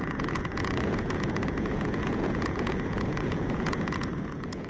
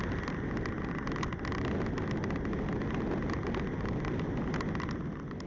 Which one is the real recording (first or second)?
second